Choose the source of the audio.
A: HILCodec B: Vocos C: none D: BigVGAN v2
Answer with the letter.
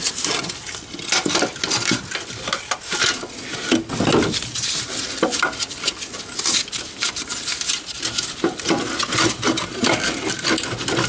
C